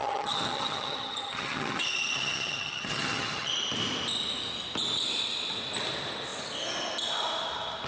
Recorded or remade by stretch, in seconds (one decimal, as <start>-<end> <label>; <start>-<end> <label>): 0.0-3.5 remade; 3.5-7.9 recorded

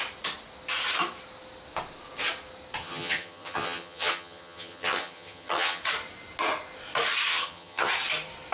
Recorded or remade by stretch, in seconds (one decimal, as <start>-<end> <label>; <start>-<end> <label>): 0.0-2.8 recorded; 2.8-5.8 remade; 5.8-7.3 recorded; 7.3-7.9 remade; 7.9-8.5 recorded

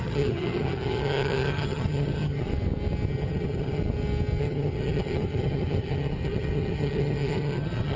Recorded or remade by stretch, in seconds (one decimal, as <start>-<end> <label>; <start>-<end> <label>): 0.0-2.5 remade; 2.5-3.1 recorded; 3.1-3.8 remade; 3.8-4.4 recorded; 4.4-8.0 remade

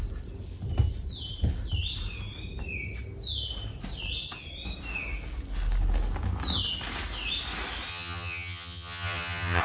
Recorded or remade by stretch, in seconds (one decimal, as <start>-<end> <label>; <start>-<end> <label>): 0.0-7.9 recorded; 7.9-9.6 remade